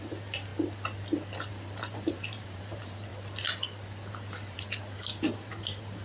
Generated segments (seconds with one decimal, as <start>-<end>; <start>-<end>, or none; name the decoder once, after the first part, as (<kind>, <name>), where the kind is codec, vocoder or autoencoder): 0.0-0.5 (vocoder, BigVGAN v2); 1.5-3.1; 4.1-6.0